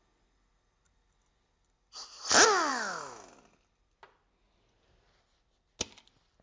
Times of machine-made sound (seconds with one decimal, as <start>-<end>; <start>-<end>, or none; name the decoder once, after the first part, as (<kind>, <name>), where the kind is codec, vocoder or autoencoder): 2.7-3.3 (autoencoder, DAC-VAE)